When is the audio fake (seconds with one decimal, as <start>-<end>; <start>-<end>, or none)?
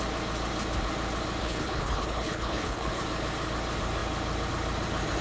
1.4-3.0